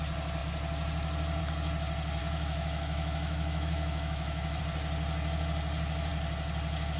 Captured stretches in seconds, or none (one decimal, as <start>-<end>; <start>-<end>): 0.0-2.2; 4.6-7.0